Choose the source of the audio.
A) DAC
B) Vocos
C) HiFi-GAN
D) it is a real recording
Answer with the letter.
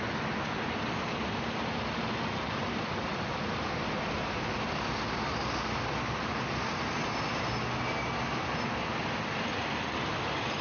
D